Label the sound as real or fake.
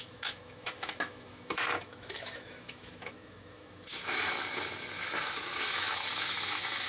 fake